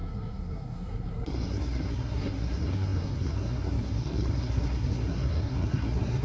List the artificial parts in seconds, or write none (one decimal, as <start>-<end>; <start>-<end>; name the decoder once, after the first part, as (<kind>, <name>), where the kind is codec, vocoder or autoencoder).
0.0-6.2 (codec, SNAC)